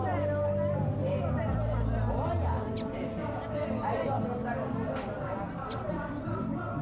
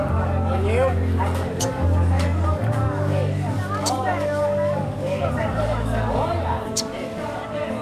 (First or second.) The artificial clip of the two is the second